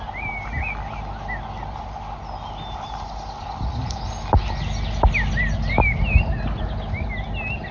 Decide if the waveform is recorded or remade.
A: recorded